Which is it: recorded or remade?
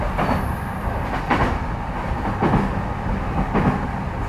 recorded